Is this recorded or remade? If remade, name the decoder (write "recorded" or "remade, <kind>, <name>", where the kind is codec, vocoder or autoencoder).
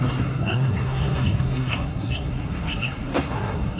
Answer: remade, codec, SNAC